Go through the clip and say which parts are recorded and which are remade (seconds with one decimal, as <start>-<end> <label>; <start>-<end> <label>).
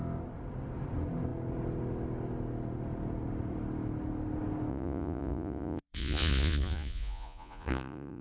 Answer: 0.0-4.7 recorded; 4.7-8.2 remade